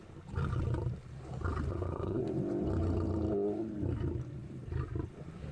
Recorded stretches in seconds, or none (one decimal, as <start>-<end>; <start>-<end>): 0.0-1.7; 2.2-5.5